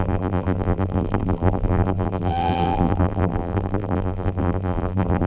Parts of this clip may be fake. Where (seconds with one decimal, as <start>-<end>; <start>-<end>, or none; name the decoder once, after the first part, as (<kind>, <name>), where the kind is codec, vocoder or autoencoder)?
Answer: 0.0-5.3 (vocoder, BigVGAN v2)